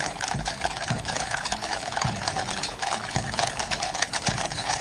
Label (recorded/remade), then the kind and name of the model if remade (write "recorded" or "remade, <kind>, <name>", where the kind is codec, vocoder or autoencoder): remade, codec, HILCodec